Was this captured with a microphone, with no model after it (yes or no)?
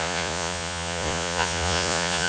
no